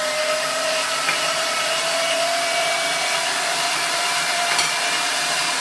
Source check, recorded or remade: remade